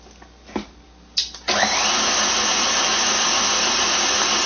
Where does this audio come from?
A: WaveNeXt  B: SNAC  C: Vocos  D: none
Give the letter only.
D